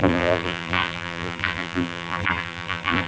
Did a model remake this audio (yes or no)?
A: yes